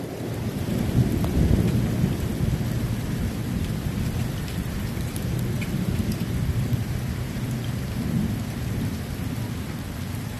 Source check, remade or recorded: remade